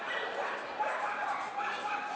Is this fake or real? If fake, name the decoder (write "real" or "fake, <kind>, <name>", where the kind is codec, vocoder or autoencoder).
real